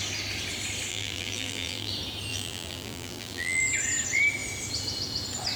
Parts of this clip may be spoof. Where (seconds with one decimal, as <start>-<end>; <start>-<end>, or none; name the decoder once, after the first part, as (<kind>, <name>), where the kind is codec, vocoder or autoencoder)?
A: 0.9-1.9 (vocoder, BigVGAN v2); 2.3-3.6